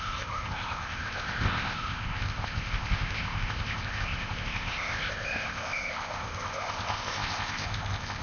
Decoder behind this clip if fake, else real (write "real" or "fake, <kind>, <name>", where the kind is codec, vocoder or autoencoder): fake, codec, ZipCodec